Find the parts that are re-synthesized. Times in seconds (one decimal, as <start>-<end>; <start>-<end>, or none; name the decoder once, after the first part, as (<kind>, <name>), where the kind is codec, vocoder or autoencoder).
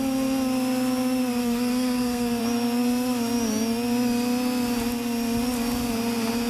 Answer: 1.4-2.4 (codec, SNAC)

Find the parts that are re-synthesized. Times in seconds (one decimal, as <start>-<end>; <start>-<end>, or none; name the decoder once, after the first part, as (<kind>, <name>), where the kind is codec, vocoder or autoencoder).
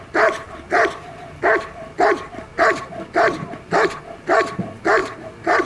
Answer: 5.0-5.7 (vocoder, BigVGAN v2)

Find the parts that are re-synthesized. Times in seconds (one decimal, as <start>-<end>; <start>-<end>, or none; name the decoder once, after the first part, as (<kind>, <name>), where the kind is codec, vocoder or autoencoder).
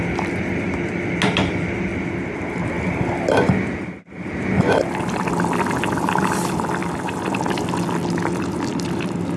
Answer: none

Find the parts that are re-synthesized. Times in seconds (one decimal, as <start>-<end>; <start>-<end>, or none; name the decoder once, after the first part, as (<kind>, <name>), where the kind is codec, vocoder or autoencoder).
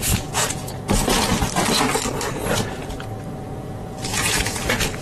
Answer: 0.0-1.3 (vocoder, Vocos); 2.3-2.8; 3.4-5.0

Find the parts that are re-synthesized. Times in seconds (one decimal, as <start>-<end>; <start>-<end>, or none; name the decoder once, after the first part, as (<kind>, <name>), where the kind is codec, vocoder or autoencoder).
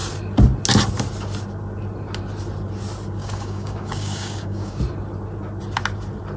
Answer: 3.2-4.8 (codec, DAC)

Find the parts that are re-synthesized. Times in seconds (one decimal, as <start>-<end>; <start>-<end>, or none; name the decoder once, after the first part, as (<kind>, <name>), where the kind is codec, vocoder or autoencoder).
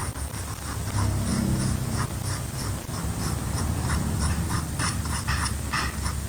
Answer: none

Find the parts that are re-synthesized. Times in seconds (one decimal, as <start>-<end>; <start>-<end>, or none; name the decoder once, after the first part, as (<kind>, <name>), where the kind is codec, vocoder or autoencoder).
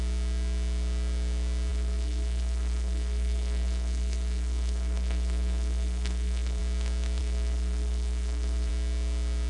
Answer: 1.7-6.6 (codec, SNAC); 7.2-8.7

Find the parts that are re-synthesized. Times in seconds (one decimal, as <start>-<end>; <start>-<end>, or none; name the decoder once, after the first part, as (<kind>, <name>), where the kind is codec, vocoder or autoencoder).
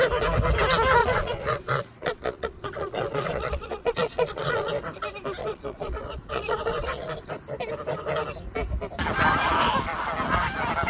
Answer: 1.0-4.7 (vocoder, Vocos); 5.4-7.3